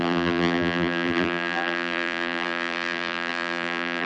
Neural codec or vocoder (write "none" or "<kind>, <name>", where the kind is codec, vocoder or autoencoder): vocoder, BigVGAN v2